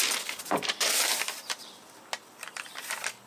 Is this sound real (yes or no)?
yes